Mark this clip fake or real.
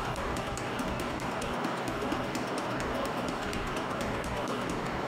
fake